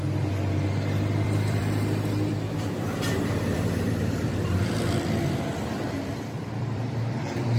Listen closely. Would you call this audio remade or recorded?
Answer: remade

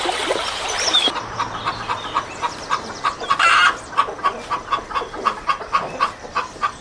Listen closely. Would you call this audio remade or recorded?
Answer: recorded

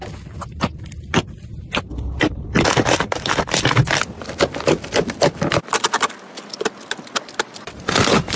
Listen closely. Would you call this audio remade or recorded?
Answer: recorded